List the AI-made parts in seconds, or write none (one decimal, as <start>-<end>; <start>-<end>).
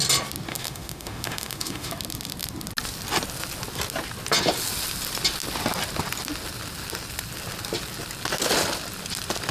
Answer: 0.5-1.9